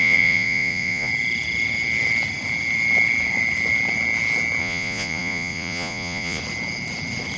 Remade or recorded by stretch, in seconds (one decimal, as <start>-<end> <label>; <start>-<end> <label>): 0.0-1.1 remade; 1.1-4.6 recorded; 4.6-6.4 remade; 6.4-7.4 recorded